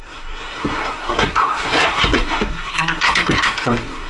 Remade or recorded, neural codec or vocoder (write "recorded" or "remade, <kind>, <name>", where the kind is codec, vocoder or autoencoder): remade, codec, SNAC